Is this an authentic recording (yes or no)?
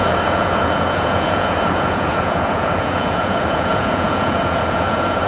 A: no